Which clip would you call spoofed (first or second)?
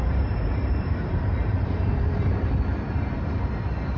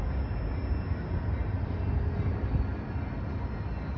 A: first